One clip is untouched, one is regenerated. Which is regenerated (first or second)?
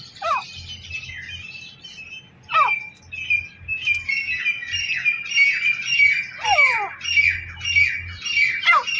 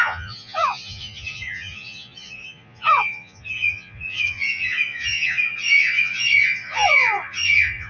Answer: second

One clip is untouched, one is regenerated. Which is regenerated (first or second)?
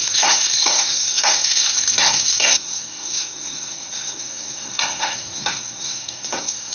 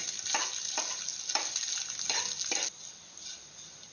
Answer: first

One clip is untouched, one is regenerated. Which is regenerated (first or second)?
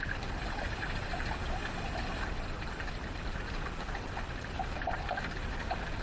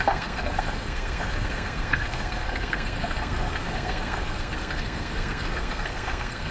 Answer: second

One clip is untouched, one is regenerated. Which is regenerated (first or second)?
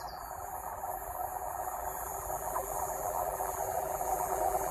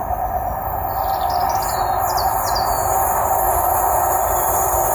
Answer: first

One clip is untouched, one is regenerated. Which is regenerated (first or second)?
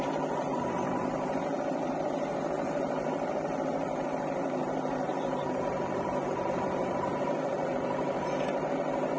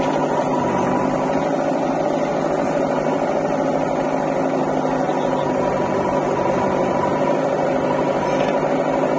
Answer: first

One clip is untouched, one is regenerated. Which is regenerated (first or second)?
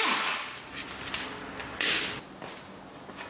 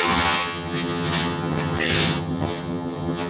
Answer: second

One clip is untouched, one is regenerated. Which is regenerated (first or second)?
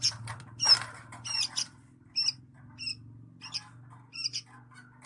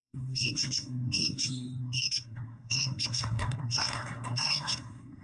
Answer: second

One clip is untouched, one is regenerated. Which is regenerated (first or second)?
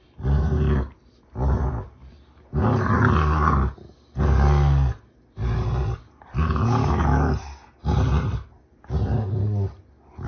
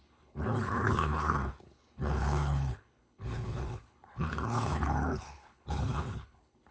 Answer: second